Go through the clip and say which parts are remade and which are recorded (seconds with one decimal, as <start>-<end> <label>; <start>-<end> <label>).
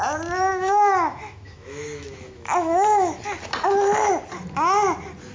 0.0-0.5 recorded; 0.5-3.2 remade; 3.2-5.3 recorded